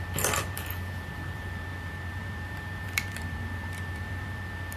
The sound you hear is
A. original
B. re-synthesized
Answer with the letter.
B